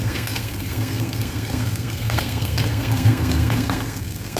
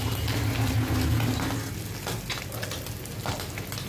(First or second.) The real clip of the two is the second